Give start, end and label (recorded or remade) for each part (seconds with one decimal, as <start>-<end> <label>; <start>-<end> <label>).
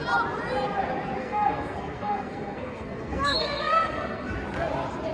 0.0-1.2 recorded; 1.2-4.3 remade; 4.3-5.1 recorded